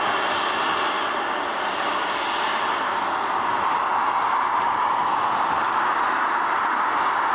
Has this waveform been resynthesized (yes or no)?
no